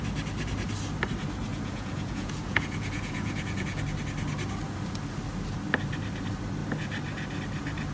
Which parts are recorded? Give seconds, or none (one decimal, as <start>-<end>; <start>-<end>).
0.0-1.5; 3.8-7.9